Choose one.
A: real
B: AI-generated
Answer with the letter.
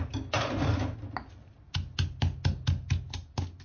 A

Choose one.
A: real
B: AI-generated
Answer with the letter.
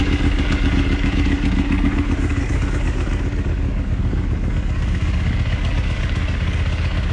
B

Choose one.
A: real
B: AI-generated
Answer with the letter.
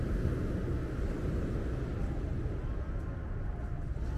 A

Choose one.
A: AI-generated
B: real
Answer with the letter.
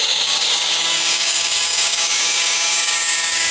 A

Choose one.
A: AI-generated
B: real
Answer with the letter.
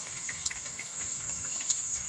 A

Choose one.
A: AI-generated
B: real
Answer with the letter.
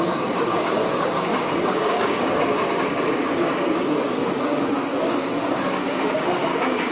A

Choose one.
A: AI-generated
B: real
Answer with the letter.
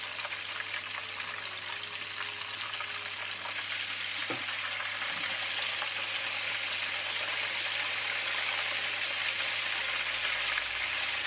B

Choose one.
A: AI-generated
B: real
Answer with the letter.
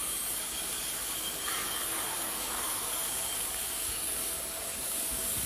A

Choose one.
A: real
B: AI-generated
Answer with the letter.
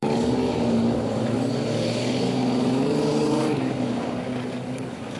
B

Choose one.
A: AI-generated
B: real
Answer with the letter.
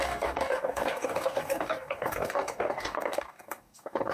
A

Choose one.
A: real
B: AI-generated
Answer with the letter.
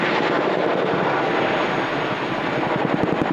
A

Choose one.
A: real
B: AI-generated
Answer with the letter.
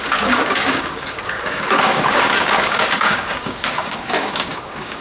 B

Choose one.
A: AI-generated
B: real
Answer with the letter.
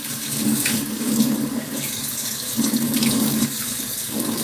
A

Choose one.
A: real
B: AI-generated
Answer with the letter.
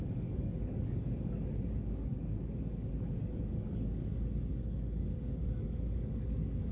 B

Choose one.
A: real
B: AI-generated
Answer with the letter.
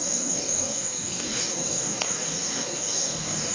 B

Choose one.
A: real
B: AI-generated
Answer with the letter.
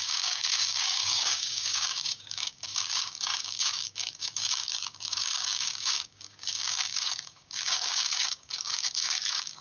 B